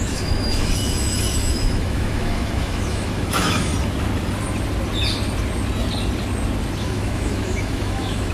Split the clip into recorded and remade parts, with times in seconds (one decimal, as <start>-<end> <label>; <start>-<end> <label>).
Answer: 0.0-3.7 remade; 3.7-6.8 recorded; 6.8-8.3 remade